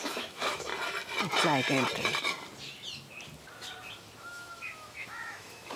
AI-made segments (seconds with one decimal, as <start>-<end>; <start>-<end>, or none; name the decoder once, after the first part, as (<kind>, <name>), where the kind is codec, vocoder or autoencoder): 0.0-0.7 (autoencoder, DAC-VAE); 4.2-5.8